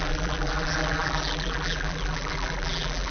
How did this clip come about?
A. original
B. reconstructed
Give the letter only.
B